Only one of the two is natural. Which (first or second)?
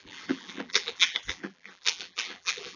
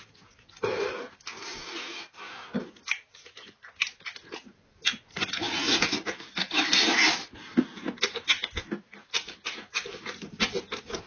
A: second